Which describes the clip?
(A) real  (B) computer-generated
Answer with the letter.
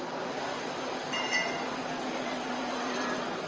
A